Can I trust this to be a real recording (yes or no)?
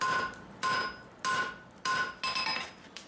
yes